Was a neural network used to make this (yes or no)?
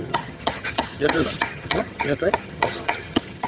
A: yes